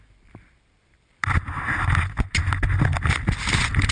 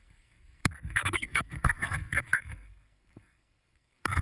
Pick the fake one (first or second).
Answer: second